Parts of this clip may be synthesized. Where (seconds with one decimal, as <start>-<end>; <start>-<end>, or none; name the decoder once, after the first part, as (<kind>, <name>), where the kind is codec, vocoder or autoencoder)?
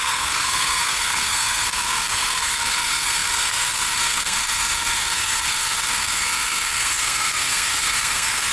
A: 0.0-8.5 (codec, SNAC)